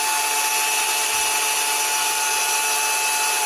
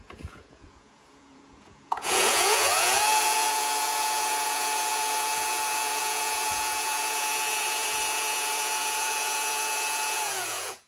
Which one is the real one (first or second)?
first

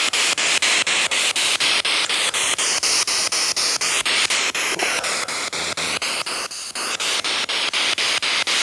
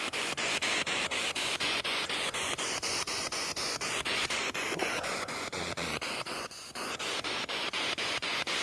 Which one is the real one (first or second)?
first